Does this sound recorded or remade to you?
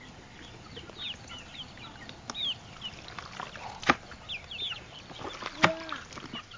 recorded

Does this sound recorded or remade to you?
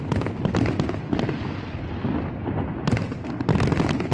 recorded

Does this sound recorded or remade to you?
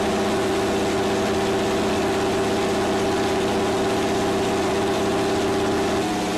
recorded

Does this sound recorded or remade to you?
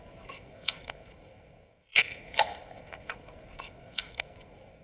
remade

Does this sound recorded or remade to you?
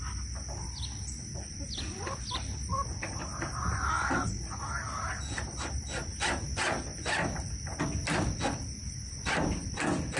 recorded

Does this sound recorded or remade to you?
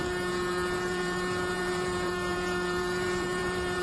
remade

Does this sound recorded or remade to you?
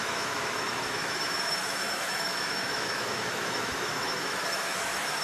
remade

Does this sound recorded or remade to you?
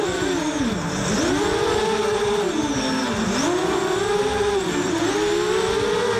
recorded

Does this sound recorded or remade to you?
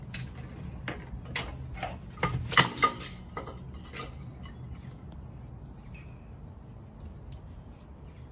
recorded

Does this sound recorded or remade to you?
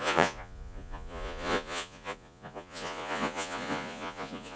remade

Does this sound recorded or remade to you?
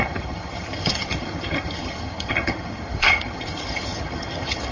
remade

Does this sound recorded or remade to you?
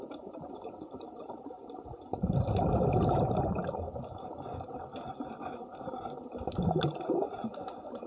remade